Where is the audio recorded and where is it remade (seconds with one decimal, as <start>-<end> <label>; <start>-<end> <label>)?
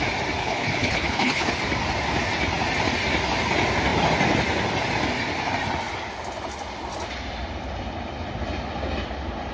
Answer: 0.0-0.4 recorded; 0.4-1.5 remade; 1.5-9.5 recorded